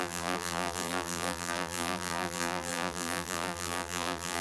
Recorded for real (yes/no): no